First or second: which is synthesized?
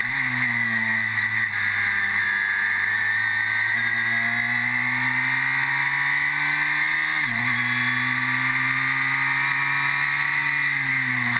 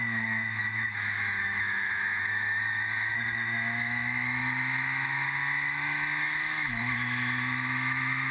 second